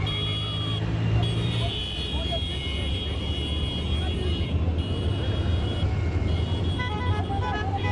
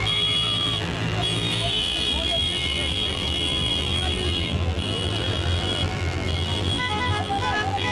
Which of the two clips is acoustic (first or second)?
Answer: first